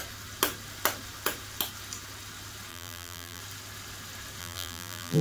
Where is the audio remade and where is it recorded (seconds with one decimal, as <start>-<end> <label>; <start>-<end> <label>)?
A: 0.0-2.7 recorded; 2.7-3.4 remade; 3.4-4.4 recorded; 4.4-5.2 remade

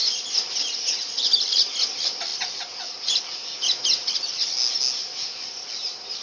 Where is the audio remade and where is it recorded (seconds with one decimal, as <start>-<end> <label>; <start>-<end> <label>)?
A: 0.0-6.2 recorded

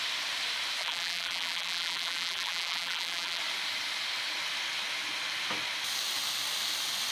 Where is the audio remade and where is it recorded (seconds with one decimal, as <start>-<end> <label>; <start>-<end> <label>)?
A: 0.0-0.8 recorded; 0.8-3.4 remade; 3.4-7.1 recorded

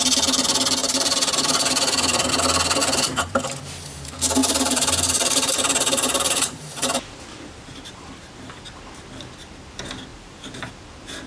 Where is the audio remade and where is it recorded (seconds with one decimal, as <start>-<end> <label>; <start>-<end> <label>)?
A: 0.0-0.8 recorded; 0.8-2.3 remade; 2.3-2.8 recorded; 2.8-3.6 remade; 3.6-4.4 recorded; 4.4-8.6 remade; 8.6-10.1 recorded; 10.1-10.7 remade; 10.7-11.3 recorded

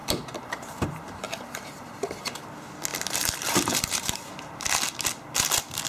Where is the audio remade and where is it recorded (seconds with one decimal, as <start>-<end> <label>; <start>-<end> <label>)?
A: 0.0-2.5 remade; 2.5-2.9 recorded; 2.9-4.3 remade; 4.3-5.9 recorded